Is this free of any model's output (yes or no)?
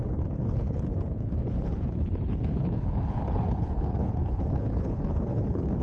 no